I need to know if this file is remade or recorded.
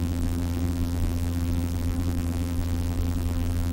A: remade